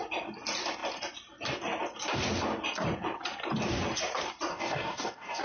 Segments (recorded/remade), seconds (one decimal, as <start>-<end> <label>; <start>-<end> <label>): 0.0-4.5 recorded; 4.5-5.4 remade